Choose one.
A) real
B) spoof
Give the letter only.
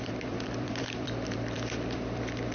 B